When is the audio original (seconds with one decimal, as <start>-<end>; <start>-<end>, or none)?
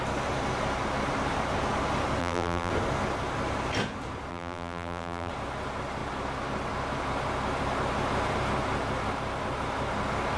0.0-2.2; 2.7-4.3; 5.3-10.4